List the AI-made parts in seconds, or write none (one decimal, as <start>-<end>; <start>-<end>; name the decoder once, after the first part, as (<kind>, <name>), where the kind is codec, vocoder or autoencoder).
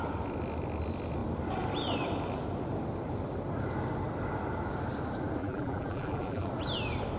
5.4-6.5 (vocoder, BigVGAN v2)